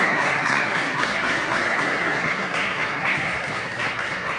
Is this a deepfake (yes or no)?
yes